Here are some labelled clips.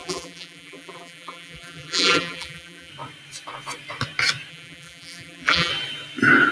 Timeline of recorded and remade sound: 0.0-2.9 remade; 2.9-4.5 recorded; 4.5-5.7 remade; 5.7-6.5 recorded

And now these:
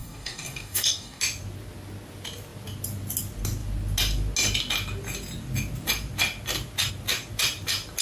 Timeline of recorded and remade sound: 0.0-1.2 remade; 1.2-8.0 recorded

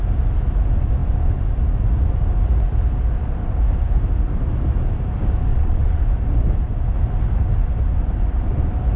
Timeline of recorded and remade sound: 0.0-5.5 recorded; 5.5-6.0 remade; 6.0-9.0 recorded